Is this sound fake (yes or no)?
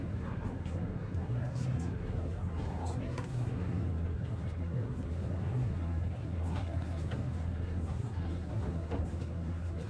yes